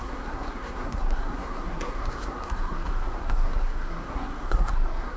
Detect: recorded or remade remade